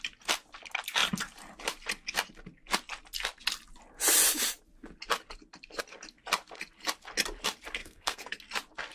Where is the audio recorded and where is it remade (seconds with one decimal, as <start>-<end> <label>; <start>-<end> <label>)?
0.0-7.8 recorded; 7.8-8.4 remade; 8.4-8.9 recorded